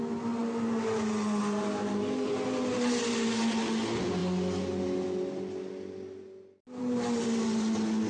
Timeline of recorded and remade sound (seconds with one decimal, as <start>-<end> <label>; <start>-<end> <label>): 0.0-8.1 recorded